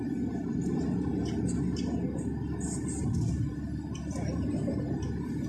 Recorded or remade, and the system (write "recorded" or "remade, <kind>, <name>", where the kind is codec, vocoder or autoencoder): recorded